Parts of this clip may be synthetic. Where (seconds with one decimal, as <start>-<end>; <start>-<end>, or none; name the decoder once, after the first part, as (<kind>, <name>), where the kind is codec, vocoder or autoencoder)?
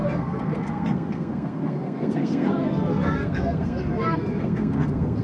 0.0-5.2 (codec, SNAC)